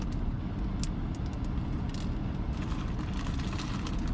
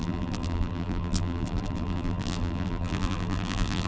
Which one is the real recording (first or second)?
first